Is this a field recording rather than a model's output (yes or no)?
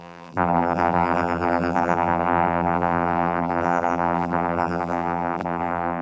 no